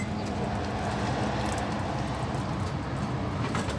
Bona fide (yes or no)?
yes